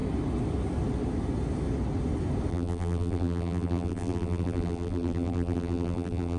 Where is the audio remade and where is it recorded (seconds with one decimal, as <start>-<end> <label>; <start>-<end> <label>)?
0.0-2.5 recorded; 2.5-6.4 remade